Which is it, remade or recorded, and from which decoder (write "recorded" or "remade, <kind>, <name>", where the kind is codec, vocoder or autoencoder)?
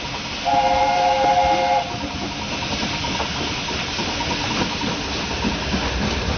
recorded